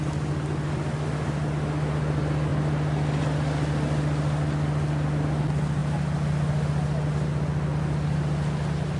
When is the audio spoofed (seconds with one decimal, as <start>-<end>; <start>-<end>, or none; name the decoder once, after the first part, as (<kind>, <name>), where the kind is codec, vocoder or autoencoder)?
none